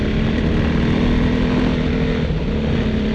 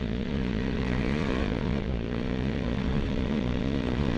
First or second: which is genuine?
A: first